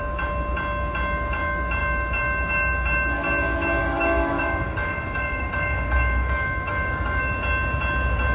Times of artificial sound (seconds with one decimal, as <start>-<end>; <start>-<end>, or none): 3.8-7.2